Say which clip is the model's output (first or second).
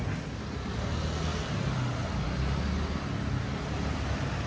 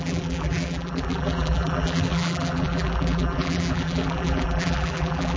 second